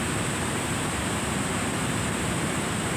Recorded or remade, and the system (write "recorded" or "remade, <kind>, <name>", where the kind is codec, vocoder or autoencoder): remade, vocoder, BigVGAN v2